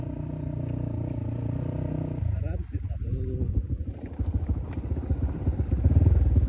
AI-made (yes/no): no